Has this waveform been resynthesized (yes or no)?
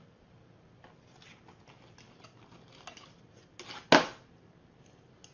no